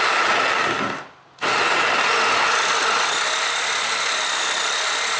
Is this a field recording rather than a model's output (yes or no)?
yes